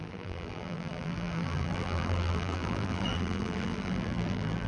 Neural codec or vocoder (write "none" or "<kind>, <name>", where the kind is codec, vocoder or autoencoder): vocoder, BigVGAN v2